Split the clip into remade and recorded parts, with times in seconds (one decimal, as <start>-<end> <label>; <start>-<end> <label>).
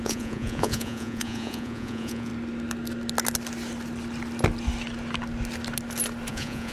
0.0-2.3 remade; 2.3-6.3 recorded; 6.3-6.7 remade